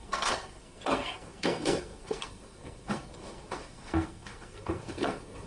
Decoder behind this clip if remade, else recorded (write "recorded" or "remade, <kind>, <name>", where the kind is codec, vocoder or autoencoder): remade, codec, SNAC